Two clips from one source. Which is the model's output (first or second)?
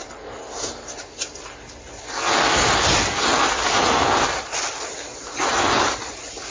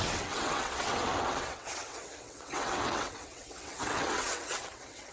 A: second